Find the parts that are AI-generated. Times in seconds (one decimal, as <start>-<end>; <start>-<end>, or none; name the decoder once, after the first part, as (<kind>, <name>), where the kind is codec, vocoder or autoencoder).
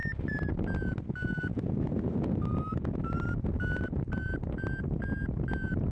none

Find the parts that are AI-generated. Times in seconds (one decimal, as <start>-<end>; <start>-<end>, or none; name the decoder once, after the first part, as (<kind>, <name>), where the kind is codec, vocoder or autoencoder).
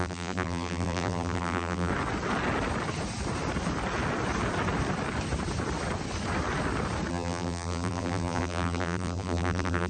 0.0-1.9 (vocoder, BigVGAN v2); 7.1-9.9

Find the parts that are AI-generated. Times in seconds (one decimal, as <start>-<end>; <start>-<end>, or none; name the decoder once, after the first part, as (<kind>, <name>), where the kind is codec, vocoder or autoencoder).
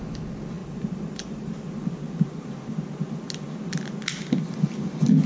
0.6-1.7 (vocoder, BigVGAN v2)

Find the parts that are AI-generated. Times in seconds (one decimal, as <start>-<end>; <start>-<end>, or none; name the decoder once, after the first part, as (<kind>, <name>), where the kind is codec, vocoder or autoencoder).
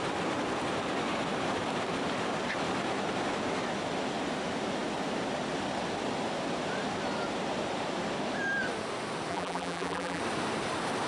9.3-10.2 (vocoder, BigVGAN v2)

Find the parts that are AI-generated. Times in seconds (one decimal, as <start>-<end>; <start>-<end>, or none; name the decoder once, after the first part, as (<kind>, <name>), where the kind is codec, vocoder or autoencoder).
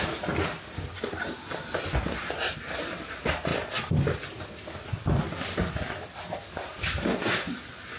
none